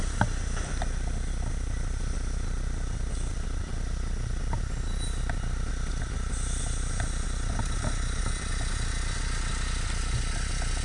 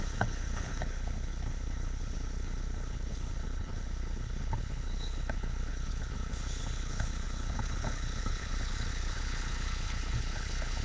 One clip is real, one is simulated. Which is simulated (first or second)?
second